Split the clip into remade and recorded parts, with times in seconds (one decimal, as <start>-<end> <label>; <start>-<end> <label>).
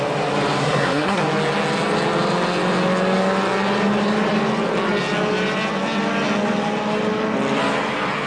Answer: 0.0-0.6 recorded; 0.6-1.2 remade; 1.2-8.3 recorded